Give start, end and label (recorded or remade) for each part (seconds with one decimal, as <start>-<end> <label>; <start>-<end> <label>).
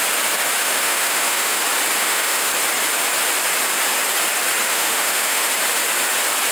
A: 0.0-0.6 recorded; 0.6-1.6 remade; 1.6-2.0 recorded; 2.0-2.5 remade; 2.5-4.7 recorded; 4.7-5.5 remade; 5.5-6.5 recorded